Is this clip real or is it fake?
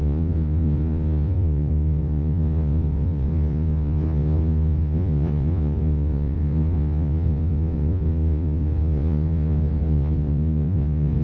fake